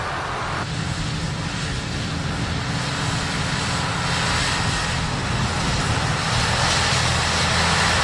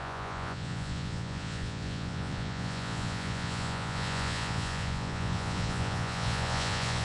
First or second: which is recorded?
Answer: first